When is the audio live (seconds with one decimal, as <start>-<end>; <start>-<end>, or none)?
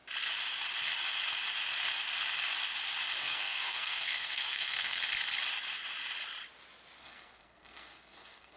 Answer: 0.0-3.2; 5.0-7.0